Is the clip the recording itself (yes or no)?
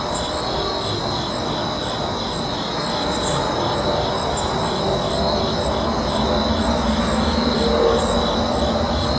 yes